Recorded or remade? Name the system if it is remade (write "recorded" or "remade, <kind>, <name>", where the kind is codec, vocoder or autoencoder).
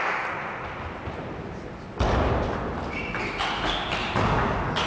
recorded